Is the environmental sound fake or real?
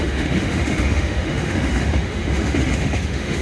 fake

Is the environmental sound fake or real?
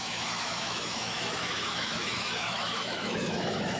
fake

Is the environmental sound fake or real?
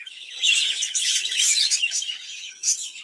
fake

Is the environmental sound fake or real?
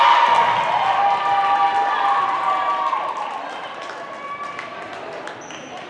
real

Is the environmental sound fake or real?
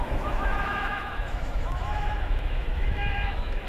fake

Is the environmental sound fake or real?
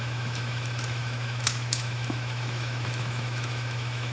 fake